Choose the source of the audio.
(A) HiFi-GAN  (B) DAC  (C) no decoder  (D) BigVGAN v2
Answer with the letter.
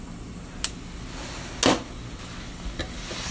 C